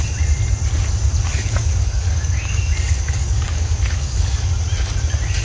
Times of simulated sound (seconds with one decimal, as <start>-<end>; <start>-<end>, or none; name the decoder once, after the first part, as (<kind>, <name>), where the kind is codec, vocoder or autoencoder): 1.3-4.5 (codec, DAC)